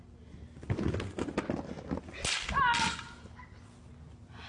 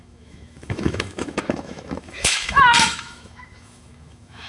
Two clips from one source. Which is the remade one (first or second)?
second